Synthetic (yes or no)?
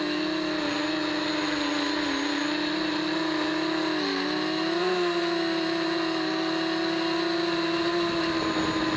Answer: no